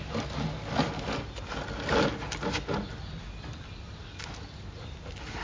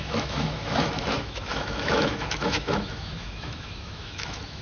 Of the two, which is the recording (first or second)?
first